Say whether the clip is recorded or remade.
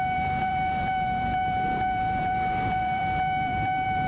remade